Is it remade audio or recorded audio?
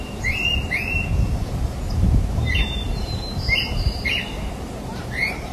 remade